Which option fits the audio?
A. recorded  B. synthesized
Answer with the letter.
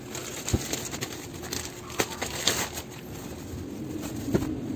A